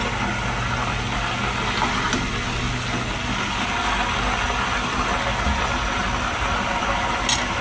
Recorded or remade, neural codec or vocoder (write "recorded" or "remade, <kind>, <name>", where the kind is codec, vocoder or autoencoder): recorded